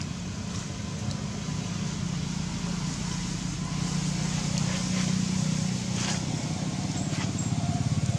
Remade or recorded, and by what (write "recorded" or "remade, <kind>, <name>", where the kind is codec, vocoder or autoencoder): recorded